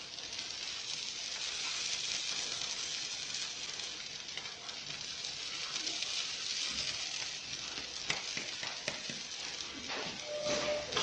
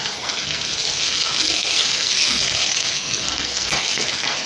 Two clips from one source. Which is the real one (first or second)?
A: first